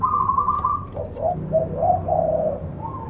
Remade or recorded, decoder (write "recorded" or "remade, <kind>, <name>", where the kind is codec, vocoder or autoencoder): remade, vocoder, BigVGAN v2